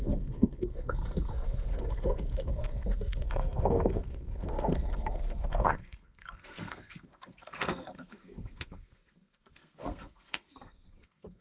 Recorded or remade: remade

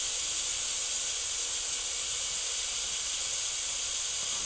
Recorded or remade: recorded